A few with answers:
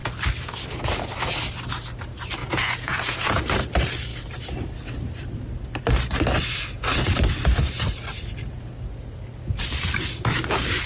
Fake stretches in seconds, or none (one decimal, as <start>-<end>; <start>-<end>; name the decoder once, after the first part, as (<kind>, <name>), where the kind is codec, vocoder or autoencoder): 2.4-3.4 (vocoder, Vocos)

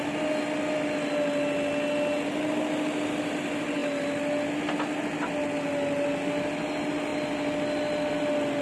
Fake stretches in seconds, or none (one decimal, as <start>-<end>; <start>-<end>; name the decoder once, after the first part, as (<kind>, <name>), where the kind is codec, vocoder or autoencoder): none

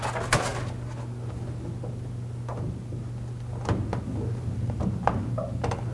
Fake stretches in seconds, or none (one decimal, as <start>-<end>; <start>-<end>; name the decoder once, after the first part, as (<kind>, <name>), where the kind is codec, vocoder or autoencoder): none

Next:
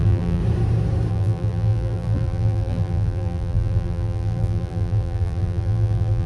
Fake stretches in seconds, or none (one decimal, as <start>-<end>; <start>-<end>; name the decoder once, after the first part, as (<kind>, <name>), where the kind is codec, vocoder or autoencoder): 0.0-0.4 (vocoder, BigVGAN v2); 1.1-6.3

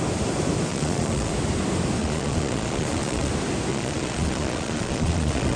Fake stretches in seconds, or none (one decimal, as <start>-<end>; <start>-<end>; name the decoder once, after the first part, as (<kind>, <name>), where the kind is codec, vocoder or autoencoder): 0.7-1.3 (vocoder, Vocos); 2.0-3.3; 3.7-5.6